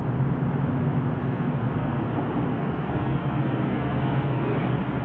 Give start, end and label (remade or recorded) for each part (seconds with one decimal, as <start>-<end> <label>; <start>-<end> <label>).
0.0-1.2 recorded; 1.2-2.1 remade; 2.1-2.5 recorded; 2.5-4.6 remade; 4.6-5.0 recorded